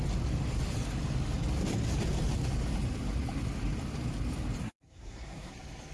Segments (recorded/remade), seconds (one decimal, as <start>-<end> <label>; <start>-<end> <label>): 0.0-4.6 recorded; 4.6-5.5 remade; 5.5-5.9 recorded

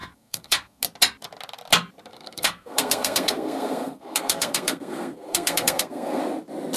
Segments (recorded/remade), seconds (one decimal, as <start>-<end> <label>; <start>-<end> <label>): 0.0-0.8 remade; 0.8-2.1 recorded; 2.1-6.2 remade; 6.2-6.8 recorded

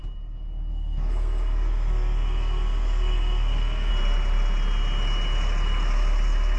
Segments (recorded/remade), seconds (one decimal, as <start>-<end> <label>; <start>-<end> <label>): 0.0-0.7 recorded; 0.7-3.9 remade; 3.9-6.6 recorded

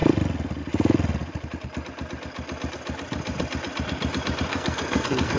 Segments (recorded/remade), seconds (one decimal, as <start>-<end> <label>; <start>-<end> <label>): 0.0-4.5 recorded; 4.5-5.4 remade

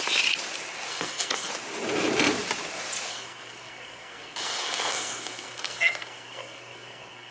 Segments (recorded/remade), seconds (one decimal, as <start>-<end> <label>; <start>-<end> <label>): 0.0-0.9 recorded; 0.9-1.5 remade; 1.5-3.1 recorded; 3.1-7.3 remade

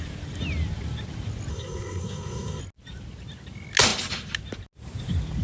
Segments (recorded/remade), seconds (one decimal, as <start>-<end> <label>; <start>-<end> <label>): 0.0-1.5 recorded; 1.5-2.6 remade; 2.6-5.4 recorded

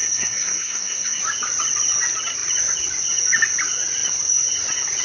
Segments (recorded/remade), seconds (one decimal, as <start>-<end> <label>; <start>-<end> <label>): 0.0-1.2 remade; 1.2-5.0 recorded